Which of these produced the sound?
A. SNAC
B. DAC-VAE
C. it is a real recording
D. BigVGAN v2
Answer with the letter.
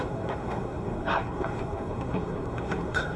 A